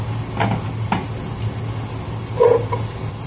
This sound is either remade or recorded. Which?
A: recorded